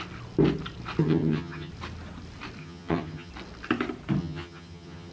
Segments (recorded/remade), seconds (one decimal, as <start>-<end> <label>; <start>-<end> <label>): 0.0-1.0 recorded; 1.0-1.7 remade; 1.7-2.6 recorded; 2.6-3.3 remade; 3.3-4.2 recorded; 4.2-5.1 remade